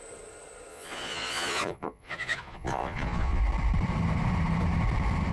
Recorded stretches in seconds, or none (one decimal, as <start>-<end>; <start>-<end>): 0.0-0.7; 3.4-5.3